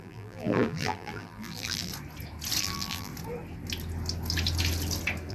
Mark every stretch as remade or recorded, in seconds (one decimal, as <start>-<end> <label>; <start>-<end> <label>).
0.0-1.9 remade; 1.9-2.6 recorded; 2.6-3.1 remade; 3.1-5.3 recorded

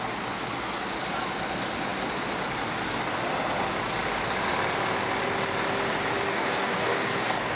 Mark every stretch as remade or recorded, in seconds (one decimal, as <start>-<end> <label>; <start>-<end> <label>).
0.0-6.3 recorded; 6.3-7.6 remade

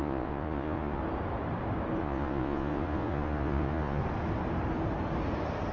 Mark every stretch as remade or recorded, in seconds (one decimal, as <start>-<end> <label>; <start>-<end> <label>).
0.0-1.0 remade; 1.0-2.0 recorded; 2.0-4.0 remade; 4.0-5.7 recorded

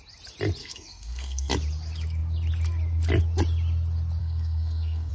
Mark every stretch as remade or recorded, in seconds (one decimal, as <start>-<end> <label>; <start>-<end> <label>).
0.0-0.6 recorded; 0.6-1.5 remade; 1.5-4.2 recorded; 4.2-5.1 remade

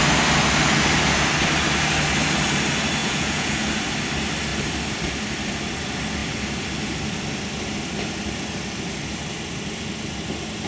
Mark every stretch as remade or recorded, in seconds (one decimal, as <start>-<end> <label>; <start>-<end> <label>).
0.0-3.0 recorded; 3.0-3.6 remade; 3.6-10.7 recorded